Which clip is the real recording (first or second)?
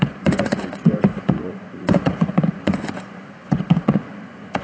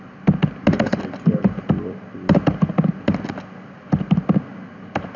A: second